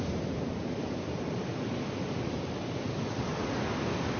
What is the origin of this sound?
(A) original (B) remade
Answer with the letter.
A